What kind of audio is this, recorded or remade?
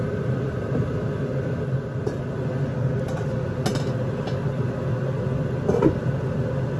recorded